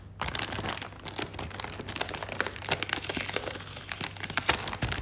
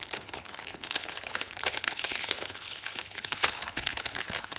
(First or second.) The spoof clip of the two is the second